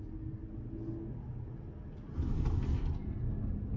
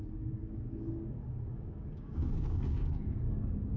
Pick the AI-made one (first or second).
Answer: second